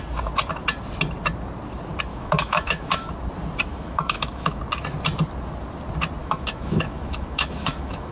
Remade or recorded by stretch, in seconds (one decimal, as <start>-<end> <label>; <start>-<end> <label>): 0.0-2.1 recorded; 2.1-3.1 remade; 3.1-3.7 recorded; 3.7-4.6 remade; 4.6-6.2 recorded; 6.2-8.1 remade